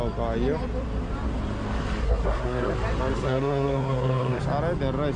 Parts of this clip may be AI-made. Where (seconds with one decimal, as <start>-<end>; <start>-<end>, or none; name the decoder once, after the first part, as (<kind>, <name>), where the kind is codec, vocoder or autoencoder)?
2.0-2.7 (codec, SNAC); 3.2-4.4